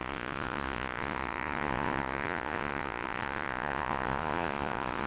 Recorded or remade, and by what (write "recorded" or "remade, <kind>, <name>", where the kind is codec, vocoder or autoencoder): remade, vocoder, Vocos